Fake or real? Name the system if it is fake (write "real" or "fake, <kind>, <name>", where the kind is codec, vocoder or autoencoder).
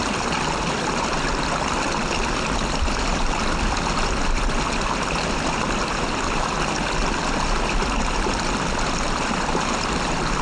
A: real